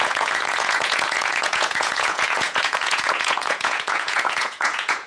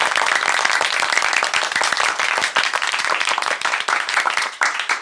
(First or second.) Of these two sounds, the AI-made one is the first